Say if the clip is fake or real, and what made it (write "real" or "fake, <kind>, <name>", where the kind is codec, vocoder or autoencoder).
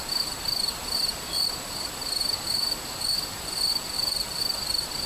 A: real